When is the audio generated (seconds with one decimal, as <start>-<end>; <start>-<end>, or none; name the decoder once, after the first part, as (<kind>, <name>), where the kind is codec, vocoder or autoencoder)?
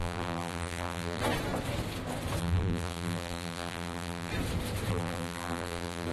0.0-1.2 (vocoder, BigVGAN v2); 2.4-4.3; 4.9-6.1